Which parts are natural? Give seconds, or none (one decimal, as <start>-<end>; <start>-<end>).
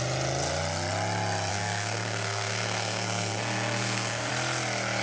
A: 0.0-1.5; 4.3-5.0